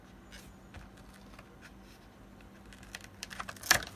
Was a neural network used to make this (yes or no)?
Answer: no